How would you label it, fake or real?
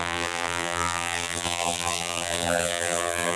fake